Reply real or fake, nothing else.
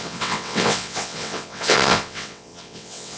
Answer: fake